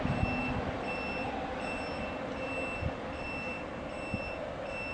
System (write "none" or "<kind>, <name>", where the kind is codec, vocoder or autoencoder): none